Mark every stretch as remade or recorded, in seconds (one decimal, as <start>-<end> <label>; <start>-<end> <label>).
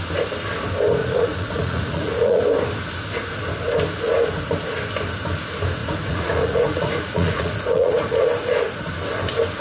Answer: 0.0-1.0 recorded; 1.0-2.4 remade; 2.4-5.8 recorded; 5.8-8.8 remade; 8.8-9.6 recorded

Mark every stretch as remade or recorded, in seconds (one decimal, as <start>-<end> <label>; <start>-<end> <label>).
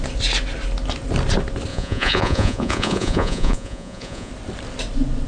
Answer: 0.0-1.7 recorded; 1.7-4.3 remade; 4.3-5.3 recorded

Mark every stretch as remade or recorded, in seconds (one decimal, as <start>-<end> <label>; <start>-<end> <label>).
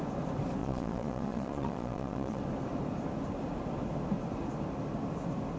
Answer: 0.0-0.6 recorded; 0.6-2.4 remade; 2.4-5.6 recorded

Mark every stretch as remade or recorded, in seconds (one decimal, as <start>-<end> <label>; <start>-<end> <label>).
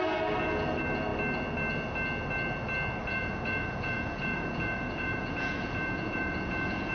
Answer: 0.0-3.0 recorded; 3.0-6.9 remade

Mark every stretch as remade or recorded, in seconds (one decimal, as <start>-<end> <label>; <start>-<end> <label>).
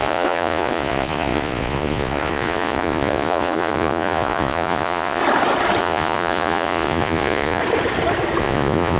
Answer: 0.0-5.2 remade; 5.2-5.8 recorded; 5.8-7.6 remade; 7.6-8.4 recorded; 8.4-9.0 remade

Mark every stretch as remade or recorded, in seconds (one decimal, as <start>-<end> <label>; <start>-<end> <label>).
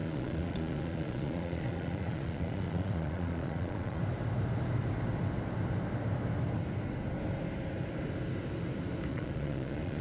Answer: 0.0-4.0 remade; 4.0-9.1 recorded; 9.1-10.0 remade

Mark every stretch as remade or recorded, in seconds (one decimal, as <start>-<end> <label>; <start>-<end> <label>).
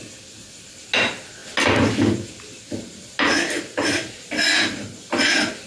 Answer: 0.0-5.7 recorded